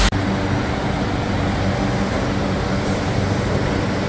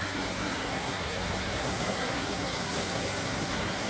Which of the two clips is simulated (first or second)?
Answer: second